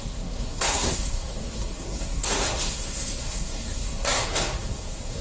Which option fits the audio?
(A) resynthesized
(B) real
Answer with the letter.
A